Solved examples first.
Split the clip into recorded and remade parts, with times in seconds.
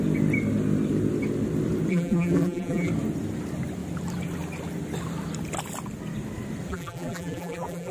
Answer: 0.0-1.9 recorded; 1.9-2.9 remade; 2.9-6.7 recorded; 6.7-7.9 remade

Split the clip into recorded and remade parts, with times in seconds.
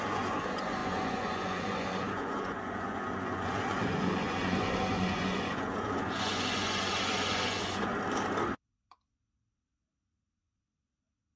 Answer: 0.0-7.9 remade; 7.9-11.4 recorded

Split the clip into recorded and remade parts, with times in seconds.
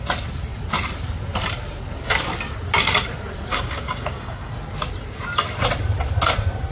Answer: 0.0-3.5 recorded; 3.5-4.5 remade; 4.5-6.7 recorded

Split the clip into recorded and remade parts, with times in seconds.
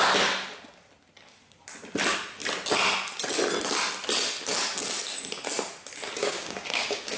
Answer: 0.0-6.2 recorded; 6.2-7.2 remade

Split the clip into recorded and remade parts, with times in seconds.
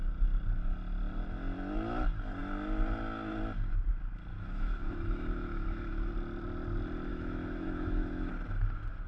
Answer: 0.0-4.3 recorded; 4.3-6.1 remade; 6.1-7.1 recorded; 7.1-8.3 remade; 8.3-9.1 recorded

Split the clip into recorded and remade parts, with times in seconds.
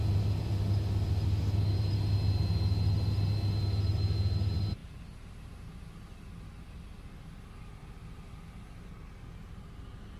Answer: 0.0-10.2 recorded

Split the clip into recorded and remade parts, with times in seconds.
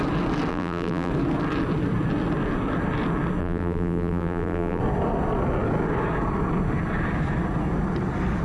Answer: 0.0-0.5 recorded; 0.5-1.1 remade; 1.1-3.4 recorded; 3.4-4.8 remade; 4.8-8.4 recorded